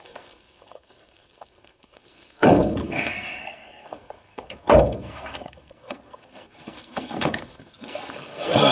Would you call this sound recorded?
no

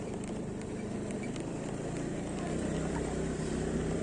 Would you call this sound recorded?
no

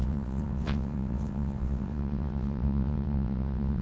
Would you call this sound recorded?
no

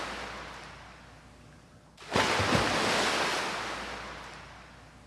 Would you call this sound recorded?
yes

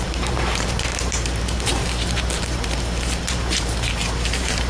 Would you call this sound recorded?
no